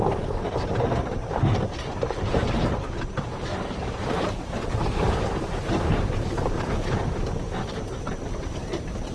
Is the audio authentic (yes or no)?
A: no